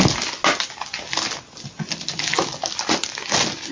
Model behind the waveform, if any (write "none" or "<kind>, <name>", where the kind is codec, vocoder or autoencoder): none